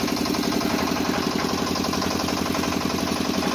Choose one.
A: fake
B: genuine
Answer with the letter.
B